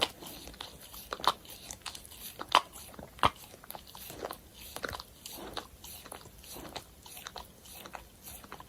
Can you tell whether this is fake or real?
real